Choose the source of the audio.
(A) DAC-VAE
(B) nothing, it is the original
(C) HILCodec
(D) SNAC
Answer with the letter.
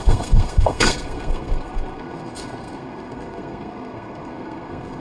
D